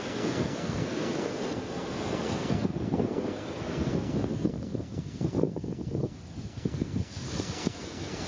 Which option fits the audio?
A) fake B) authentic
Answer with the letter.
A